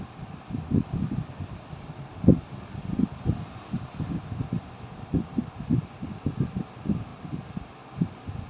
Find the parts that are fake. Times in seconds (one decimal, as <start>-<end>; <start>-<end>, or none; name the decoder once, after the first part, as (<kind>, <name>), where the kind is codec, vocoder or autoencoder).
none